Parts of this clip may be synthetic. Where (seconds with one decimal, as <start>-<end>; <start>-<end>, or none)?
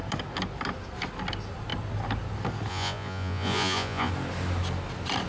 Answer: 2.7-4.1